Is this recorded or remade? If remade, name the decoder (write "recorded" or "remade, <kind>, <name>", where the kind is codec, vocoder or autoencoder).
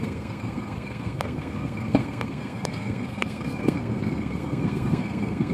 remade, codec, SNAC